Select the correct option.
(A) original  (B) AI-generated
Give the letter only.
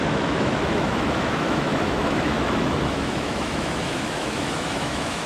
B